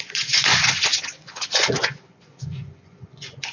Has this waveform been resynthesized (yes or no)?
yes